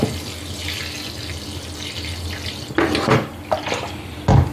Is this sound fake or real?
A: real